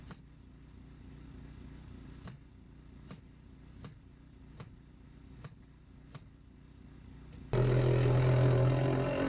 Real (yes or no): yes